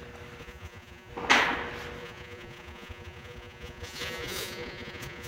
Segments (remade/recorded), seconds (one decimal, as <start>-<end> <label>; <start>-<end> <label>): 0.0-0.4 recorded; 0.4-1.1 remade; 1.1-2.0 recorded; 2.0-5.3 remade

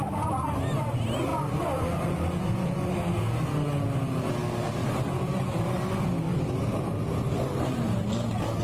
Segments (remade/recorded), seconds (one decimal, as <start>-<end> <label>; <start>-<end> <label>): 0.0-4.8 recorded; 4.8-5.8 remade; 5.8-6.3 recorded; 6.3-8.0 remade; 8.0-8.6 recorded

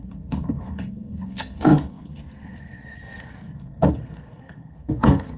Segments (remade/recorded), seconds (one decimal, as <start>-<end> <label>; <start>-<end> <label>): 0.0-5.4 remade

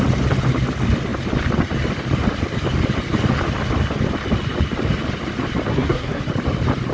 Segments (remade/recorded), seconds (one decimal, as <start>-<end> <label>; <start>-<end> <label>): 0.0-5.7 recorded; 5.7-6.2 remade; 6.2-6.9 recorded